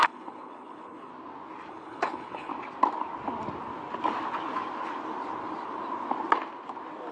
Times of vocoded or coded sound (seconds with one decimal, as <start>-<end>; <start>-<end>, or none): 0.0-1.1; 1.7-2.5